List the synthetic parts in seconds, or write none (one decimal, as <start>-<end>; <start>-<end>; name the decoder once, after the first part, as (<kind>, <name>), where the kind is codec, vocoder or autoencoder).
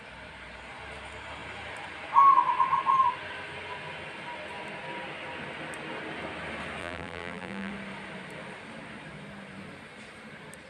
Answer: 6.8-7.7 (vocoder, BigVGAN v2)